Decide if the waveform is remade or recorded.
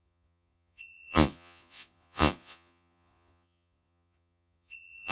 remade